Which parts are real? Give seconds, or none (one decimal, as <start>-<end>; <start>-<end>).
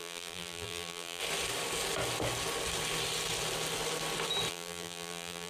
1.2-4.5